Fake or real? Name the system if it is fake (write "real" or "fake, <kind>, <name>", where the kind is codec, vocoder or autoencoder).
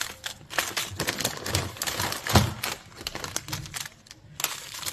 real